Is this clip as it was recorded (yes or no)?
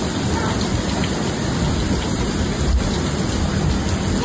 yes